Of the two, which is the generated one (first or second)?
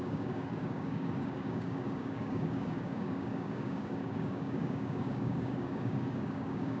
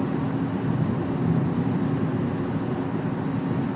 first